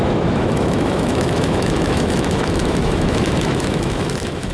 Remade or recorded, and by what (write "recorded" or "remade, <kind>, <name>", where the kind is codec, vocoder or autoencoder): remade, autoencoder, DAC-VAE